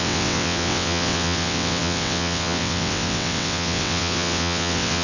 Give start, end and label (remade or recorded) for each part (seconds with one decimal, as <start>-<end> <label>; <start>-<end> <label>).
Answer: 0.0-5.0 remade